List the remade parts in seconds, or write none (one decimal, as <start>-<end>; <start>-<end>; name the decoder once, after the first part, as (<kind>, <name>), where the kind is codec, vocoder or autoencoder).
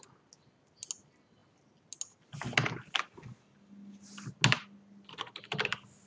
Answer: none